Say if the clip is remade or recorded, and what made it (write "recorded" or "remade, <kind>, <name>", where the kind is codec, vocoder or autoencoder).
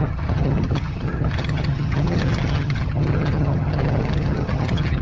remade, vocoder, HiFi-GAN